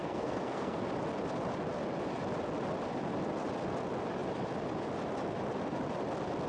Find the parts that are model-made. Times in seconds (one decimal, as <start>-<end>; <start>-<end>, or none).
0.0-0.8